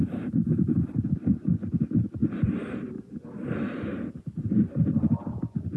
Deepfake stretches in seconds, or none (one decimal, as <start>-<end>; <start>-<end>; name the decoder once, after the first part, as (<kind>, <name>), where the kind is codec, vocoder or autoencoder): none